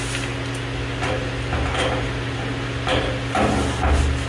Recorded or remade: recorded